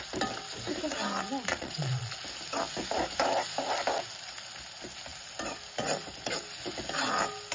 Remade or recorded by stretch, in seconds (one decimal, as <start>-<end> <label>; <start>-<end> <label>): 0.0-1.5 recorded; 1.5-2.1 remade; 2.1-7.5 recorded